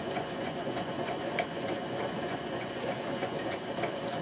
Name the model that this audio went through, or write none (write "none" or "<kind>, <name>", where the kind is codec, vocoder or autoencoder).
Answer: vocoder, Vocos